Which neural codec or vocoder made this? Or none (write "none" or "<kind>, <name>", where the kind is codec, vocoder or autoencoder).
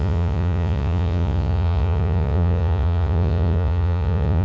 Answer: vocoder, Vocos